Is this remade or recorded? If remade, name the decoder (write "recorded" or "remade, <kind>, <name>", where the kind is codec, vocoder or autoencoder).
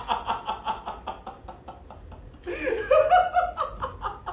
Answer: recorded